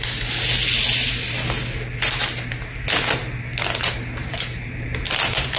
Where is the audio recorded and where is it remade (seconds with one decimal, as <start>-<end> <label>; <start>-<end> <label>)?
0.0-0.4 remade; 0.4-3.8 recorded; 3.8-5.6 remade